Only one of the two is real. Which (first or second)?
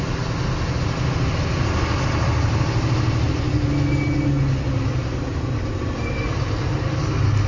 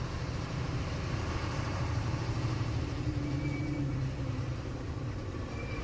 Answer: first